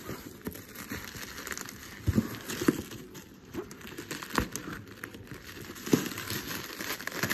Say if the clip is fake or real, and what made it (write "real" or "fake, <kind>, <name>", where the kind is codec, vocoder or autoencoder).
real